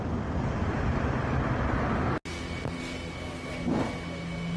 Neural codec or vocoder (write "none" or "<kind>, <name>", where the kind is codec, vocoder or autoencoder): none